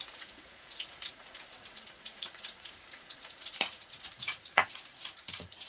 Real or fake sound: fake